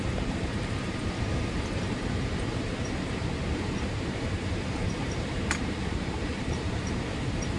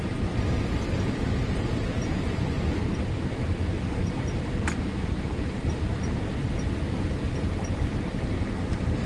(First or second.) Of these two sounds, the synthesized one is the first